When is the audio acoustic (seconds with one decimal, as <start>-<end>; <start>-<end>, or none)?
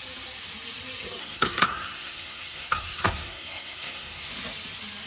0.0-1.2; 4.3-5.1